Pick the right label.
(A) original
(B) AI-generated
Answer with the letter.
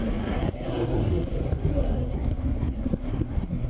B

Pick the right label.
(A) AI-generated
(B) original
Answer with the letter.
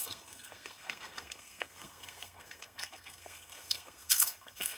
A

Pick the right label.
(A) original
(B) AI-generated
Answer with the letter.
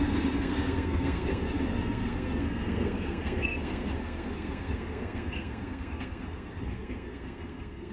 B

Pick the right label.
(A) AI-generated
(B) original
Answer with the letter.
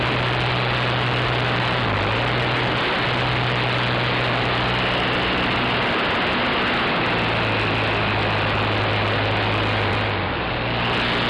B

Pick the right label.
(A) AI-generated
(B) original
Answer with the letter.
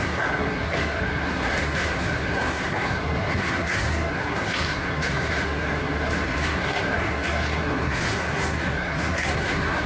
A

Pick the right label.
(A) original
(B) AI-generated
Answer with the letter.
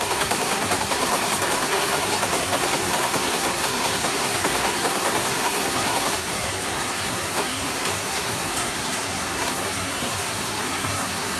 B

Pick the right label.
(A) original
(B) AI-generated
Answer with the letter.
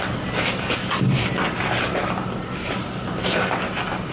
A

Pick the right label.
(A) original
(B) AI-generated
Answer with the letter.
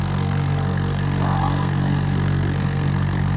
B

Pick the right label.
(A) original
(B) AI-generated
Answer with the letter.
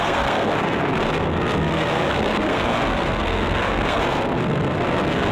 B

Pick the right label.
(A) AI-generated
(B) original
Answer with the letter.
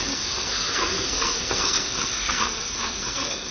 A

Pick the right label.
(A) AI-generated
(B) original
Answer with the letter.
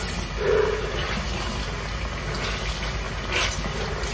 B